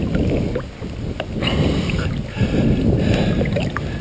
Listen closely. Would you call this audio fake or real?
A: real